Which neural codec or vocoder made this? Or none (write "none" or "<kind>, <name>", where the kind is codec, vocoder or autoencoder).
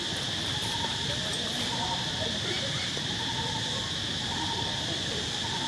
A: none